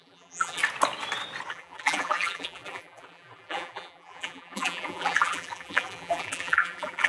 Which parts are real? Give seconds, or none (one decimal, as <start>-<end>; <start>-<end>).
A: 0.6-1.5